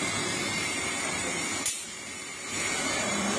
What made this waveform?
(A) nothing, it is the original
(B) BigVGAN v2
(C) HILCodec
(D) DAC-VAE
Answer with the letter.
B